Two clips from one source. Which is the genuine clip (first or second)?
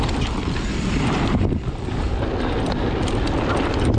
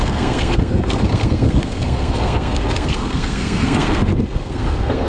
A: first